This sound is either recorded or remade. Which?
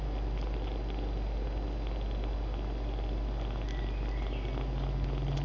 recorded